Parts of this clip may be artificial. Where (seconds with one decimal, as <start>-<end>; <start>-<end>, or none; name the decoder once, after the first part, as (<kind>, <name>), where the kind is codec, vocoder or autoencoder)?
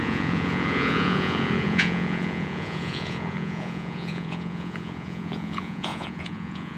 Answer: 0.0-6.8 (vocoder, Vocos)